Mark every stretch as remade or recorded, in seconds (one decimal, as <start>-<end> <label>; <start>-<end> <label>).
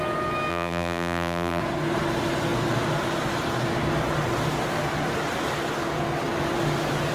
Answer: 0.0-0.5 recorded; 0.5-1.6 remade; 1.6-7.1 recorded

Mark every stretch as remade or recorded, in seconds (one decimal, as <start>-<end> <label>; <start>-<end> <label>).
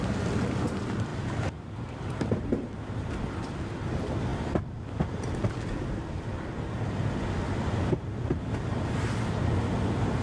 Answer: 0.0-1.1 recorded; 1.1-3.1 remade; 3.1-10.2 recorded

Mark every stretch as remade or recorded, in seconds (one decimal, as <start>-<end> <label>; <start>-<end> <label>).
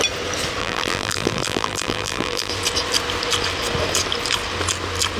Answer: 0.0-0.6 recorded; 0.6-2.5 remade; 2.5-5.2 recorded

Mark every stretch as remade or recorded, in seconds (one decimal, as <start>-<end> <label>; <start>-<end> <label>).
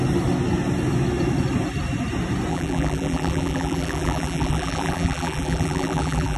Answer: 0.0-2.5 recorded; 2.5-6.4 remade